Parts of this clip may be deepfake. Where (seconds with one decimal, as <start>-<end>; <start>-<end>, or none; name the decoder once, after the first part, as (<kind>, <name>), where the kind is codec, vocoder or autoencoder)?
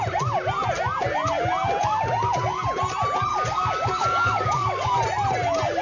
3.3-5.0 (codec, DAC)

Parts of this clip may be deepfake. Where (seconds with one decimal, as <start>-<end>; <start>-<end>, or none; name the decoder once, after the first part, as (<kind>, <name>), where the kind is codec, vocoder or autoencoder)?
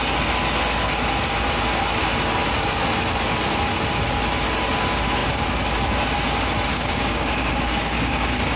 6.7-8.6 (codec, DAC)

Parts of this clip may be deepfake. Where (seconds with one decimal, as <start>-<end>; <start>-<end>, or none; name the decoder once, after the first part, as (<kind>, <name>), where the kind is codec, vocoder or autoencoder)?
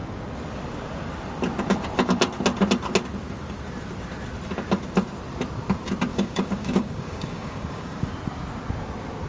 6.1-8.1 (codec, DAC)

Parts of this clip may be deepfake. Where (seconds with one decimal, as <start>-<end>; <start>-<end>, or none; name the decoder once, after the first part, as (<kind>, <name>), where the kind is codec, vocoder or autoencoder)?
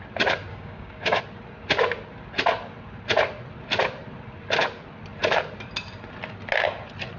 0.5-1.2 (codec, DAC)